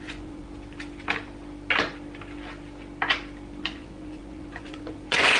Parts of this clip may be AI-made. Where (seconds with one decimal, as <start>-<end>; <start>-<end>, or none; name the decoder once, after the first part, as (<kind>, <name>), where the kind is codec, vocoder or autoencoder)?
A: 0.0-0.4 (vocoder, Vocos); 3.6-5.4